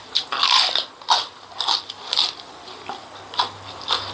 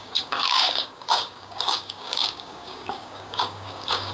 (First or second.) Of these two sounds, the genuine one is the first